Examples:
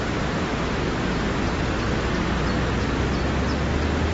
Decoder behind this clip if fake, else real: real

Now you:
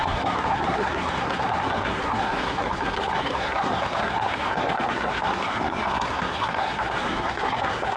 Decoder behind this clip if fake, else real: fake, codec, SNAC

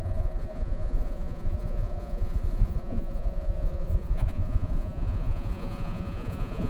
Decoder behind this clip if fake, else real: fake, vocoder, Vocos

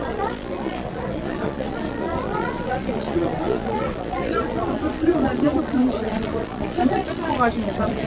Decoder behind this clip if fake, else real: fake, vocoder, Vocos